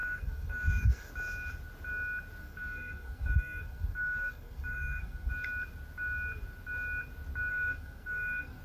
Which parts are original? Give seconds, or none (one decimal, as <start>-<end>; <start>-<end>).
1.1-2.4; 5.3-7.5